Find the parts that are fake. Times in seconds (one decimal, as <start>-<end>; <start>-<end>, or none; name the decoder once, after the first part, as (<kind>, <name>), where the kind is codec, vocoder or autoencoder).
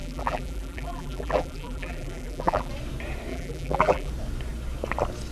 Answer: 0.0-2.7 (vocoder, BigVGAN v2); 3.3-4.1